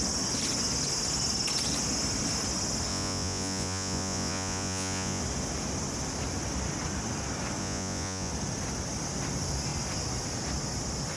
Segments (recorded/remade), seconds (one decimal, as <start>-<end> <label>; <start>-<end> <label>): 0.0-2.9 recorded; 2.9-5.2 remade; 5.2-7.6 recorded; 7.6-8.3 remade; 8.3-11.2 recorded